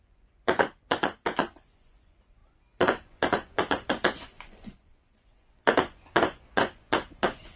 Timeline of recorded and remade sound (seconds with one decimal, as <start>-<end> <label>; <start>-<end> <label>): 0.0-7.6 remade